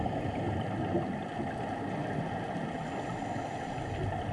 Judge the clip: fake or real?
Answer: real